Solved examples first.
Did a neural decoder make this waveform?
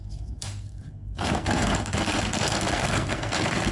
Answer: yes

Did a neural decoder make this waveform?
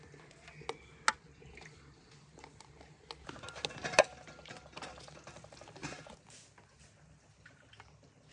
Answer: no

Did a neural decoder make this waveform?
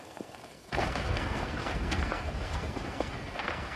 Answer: yes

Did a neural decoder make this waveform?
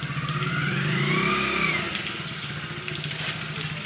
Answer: no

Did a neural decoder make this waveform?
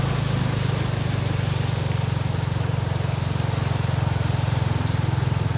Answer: no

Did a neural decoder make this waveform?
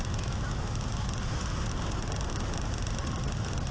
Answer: no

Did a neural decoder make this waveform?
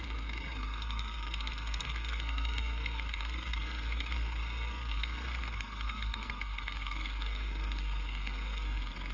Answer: yes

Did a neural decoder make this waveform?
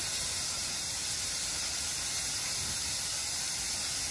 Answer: no